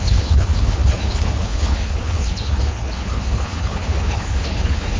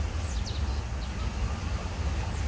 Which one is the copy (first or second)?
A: first